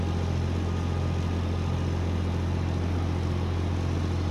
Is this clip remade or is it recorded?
recorded